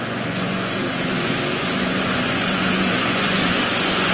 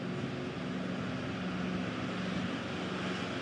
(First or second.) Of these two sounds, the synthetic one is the first